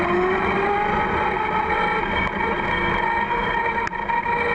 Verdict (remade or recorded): recorded